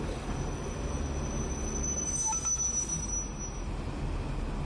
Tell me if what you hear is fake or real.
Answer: real